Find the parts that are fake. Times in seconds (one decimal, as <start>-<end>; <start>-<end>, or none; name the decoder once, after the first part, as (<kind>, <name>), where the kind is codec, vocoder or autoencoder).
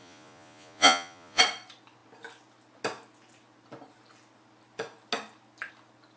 0.0-1.4 (vocoder, Vocos)